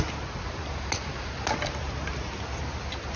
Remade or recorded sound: recorded